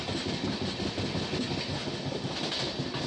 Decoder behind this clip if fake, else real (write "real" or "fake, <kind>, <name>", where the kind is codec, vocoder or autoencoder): real